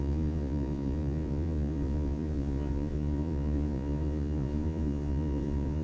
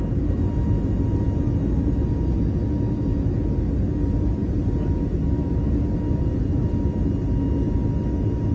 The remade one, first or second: first